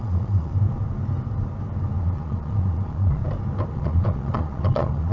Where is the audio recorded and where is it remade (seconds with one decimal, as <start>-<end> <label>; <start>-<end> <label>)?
0.0-0.5 remade; 0.5-2.0 recorded; 2.0-3.2 remade; 3.2-3.7 recorded; 3.7-5.1 remade